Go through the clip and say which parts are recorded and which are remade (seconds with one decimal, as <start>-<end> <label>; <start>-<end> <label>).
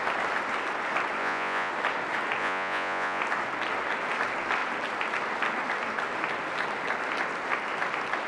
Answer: 0.0-1.2 recorded; 1.2-1.7 remade; 1.7-2.4 recorded; 2.4-3.2 remade; 3.2-8.3 recorded